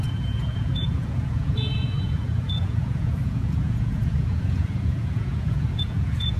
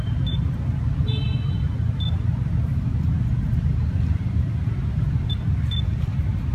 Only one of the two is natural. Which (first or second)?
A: second